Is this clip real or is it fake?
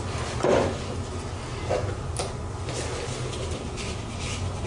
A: real